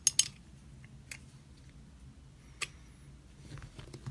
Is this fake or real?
real